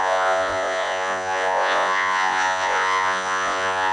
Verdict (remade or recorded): remade